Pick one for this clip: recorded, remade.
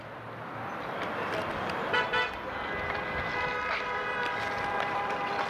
remade